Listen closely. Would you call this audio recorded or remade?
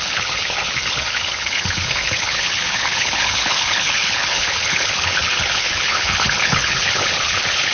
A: remade